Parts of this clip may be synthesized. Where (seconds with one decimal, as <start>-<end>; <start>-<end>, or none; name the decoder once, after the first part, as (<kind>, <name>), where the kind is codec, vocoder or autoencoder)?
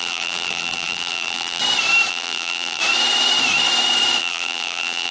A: 0.0-1.6 (vocoder, BigVGAN v2); 2.1-2.8; 4.2-5.1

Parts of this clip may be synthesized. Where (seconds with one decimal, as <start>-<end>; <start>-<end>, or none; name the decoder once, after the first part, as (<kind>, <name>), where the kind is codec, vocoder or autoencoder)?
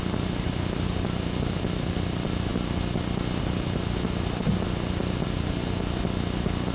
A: none